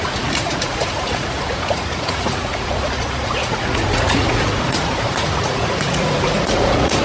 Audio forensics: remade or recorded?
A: remade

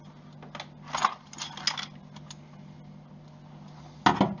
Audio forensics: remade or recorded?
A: recorded